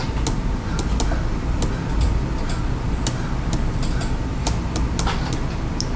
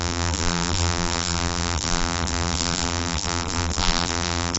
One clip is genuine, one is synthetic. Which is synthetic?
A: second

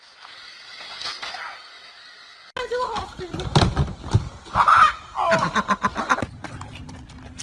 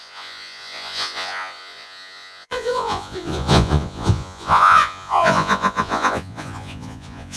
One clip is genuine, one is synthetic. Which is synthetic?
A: second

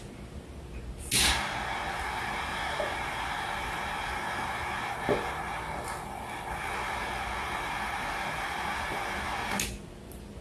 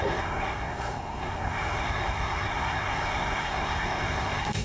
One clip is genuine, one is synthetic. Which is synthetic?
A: second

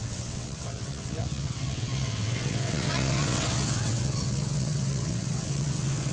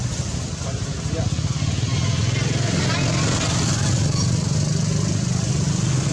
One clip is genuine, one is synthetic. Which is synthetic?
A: first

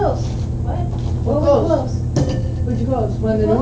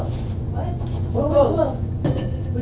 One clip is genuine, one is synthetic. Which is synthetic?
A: second